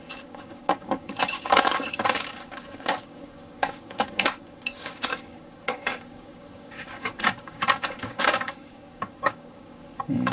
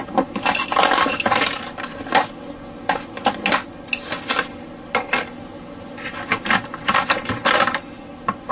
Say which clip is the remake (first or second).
first